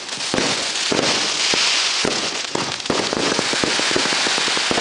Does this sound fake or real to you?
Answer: fake